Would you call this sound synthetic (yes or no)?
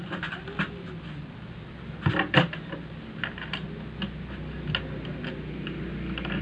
no